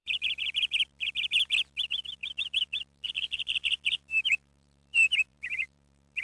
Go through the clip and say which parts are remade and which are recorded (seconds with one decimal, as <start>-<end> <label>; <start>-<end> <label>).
0.0-6.2 remade